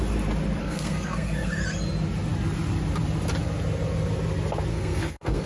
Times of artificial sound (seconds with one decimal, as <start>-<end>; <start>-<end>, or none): 0.6-1.6; 4.7-5.5